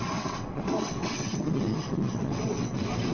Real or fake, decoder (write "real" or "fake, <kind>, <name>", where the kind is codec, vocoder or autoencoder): fake, vocoder, WaveNeXt